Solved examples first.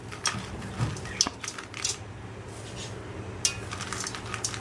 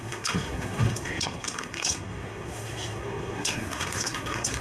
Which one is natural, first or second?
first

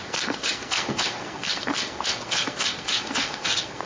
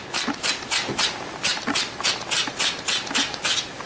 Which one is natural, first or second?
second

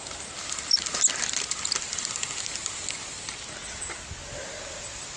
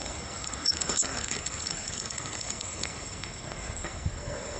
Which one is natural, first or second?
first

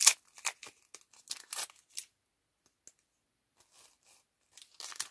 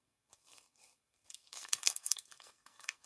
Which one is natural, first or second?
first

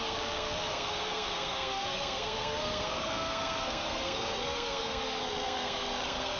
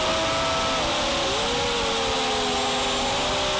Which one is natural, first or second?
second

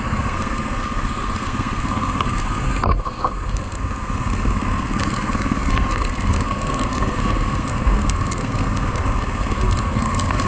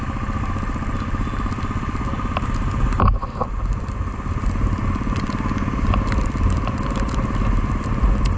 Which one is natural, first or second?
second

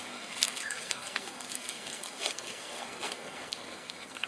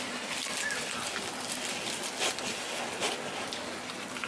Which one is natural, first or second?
second